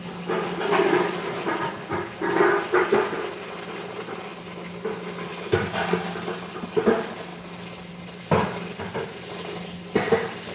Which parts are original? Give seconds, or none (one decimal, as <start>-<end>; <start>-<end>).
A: 0.0-10.5